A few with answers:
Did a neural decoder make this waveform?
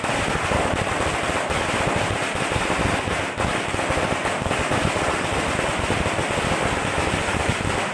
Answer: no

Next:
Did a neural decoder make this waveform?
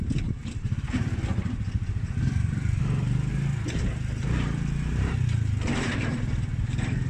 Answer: no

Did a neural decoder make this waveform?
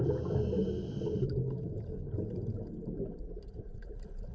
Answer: no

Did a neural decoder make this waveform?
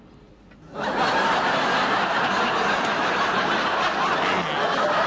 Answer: no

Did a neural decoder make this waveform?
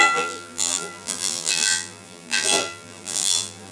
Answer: yes